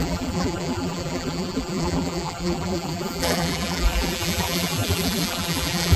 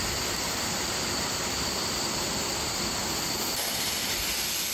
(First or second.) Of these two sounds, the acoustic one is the second